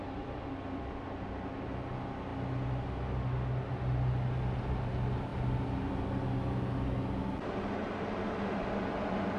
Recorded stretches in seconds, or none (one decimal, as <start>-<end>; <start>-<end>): 0.0-9.4

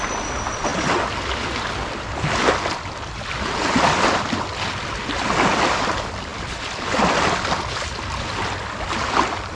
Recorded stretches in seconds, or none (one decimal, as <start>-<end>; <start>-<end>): 0.0-9.5

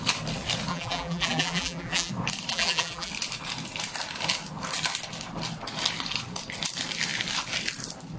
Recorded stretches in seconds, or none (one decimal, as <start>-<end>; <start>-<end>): 0.0-0.7; 2.1-2.5; 3.1-8.2

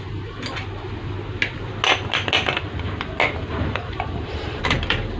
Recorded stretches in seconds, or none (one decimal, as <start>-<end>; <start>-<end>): 0.6-3.5

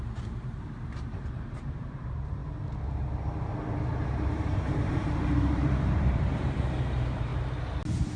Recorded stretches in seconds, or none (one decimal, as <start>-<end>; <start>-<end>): 2.4-3.9; 7.3-8.2

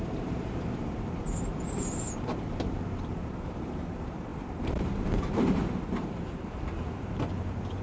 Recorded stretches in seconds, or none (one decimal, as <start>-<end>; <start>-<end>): none

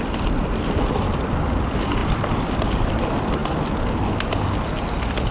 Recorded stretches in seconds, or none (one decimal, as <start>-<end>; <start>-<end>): 3.4-5.3

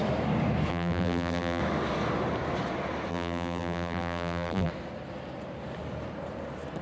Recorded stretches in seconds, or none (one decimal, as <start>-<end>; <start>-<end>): 0.0-0.7; 1.6-3.1; 4.7-6.8